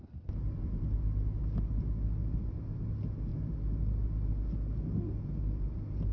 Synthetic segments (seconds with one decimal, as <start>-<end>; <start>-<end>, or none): none